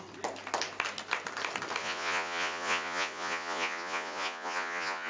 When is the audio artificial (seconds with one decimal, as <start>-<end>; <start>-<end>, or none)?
1.8-5.1